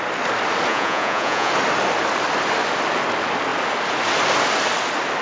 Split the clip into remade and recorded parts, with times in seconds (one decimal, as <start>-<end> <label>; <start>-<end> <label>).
0.0-0.7 recorded; 0.7-1.5 remade; 1.5-5.2 recorded